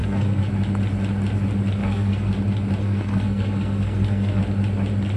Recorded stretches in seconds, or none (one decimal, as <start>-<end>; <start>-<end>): 0.5-1.8; 2.3-2.8; 4.4-5.2